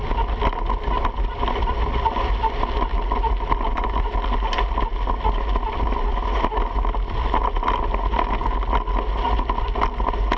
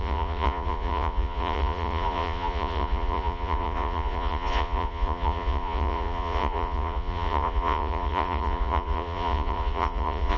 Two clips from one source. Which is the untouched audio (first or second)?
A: first